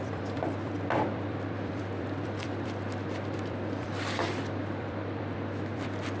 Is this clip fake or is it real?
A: fake